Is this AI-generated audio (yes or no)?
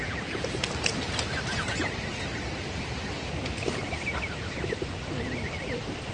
no